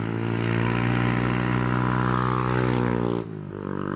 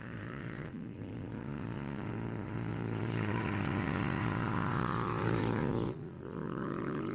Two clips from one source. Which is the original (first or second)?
first